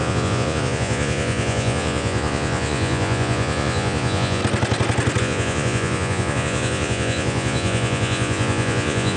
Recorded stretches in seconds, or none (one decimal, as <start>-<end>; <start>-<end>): 4.4-5.2